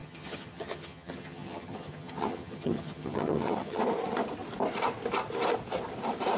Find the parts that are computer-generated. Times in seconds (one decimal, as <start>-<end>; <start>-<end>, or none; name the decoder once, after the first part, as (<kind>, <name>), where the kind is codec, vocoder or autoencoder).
0.0-3.8 (vocoder, HiFi-GAN)